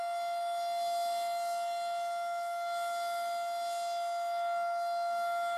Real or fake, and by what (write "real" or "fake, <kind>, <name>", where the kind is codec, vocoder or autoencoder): real